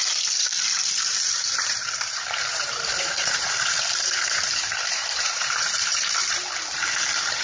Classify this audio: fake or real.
fake